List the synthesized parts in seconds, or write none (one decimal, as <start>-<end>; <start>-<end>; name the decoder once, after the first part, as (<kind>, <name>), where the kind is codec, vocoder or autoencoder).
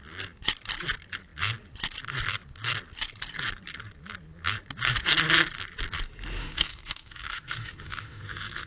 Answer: 6.4-8.7 (autoencoder, DAC-VAE)